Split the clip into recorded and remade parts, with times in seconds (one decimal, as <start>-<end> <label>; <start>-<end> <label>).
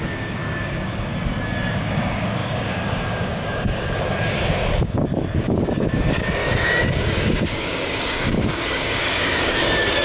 0.0-1.1 remade; 1.1-1.7 recorded; 1.7-10.0 remade